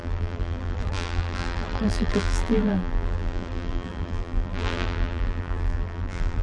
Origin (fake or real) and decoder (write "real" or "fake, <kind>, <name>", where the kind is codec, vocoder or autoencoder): fake, vocoder, BigVGAN v2